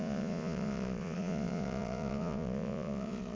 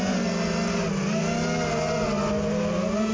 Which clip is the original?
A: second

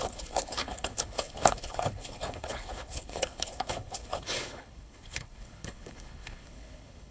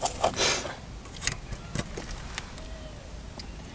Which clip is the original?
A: second